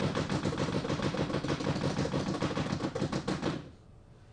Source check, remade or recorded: recorded